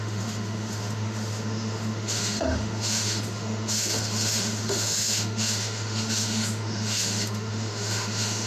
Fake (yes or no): yes